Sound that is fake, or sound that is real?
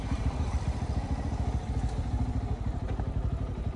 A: fake